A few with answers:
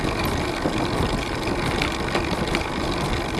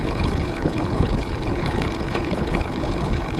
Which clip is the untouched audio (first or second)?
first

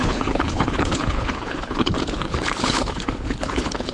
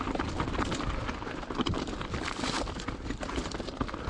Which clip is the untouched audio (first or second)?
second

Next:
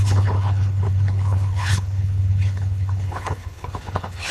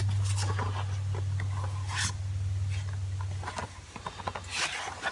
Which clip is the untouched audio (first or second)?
second